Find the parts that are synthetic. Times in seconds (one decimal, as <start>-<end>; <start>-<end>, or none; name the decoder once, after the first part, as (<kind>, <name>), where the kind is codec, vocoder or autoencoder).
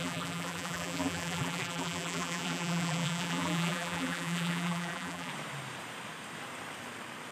0.0-5.3 (vocoder, BigVGAN v2)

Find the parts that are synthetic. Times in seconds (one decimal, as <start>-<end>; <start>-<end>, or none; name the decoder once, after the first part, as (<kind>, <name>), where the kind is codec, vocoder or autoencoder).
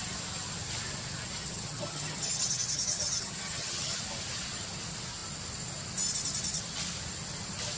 1.4-4.0 (vocoder, HiFi-GAN)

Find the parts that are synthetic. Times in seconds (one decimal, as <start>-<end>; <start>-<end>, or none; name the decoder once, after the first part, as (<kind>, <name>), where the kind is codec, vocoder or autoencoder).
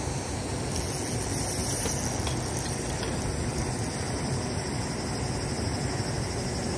none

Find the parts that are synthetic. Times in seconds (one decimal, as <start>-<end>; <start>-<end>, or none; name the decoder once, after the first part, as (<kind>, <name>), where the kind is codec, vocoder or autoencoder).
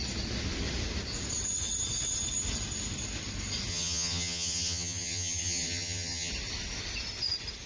3.7-6.3 (vocoder, HiFi-GAN)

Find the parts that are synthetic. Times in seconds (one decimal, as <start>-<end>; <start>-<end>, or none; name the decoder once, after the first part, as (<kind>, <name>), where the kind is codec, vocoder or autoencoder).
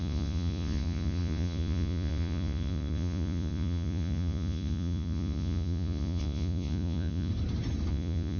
0.0-7.3 (vocoder, Vocos); 7.9-8.4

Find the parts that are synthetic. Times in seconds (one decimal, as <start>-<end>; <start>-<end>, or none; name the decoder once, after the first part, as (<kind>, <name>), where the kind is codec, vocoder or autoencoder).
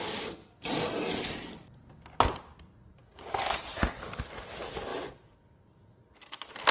0.0-0.7 (vocoder, BigVGAN v2); 4.9-6.7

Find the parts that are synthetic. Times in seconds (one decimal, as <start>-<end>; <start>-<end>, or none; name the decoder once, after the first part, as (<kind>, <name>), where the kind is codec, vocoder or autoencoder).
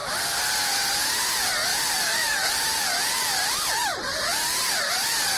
1.7-4.9 (vocoder, BigVGAN v2)